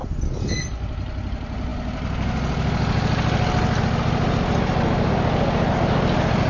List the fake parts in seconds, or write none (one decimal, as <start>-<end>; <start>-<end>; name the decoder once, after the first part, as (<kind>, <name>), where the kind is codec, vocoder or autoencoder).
none